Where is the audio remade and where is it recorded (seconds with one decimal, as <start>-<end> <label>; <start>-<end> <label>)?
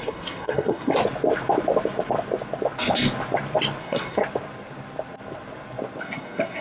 0.0-1.0 remade; 1.0-3.8 recorded; 3.8-4.2 remade; 4.2-6.0 recorded; 6.0-6.6 remade